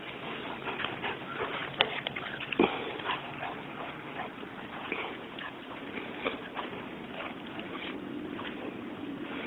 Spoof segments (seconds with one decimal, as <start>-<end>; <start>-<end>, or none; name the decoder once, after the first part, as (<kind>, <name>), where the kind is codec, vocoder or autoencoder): 4.8-5.6 (vocoder, Vocos)